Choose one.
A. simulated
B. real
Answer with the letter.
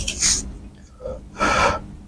B